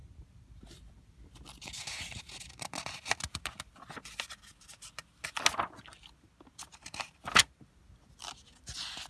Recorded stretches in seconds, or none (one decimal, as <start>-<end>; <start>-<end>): 0.0-6.7; 7.3-9.1